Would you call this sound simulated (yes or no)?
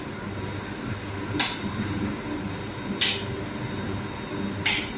no